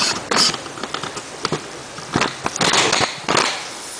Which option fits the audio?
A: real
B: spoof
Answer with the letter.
A